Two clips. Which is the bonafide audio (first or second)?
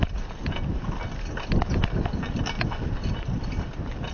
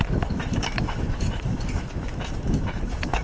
first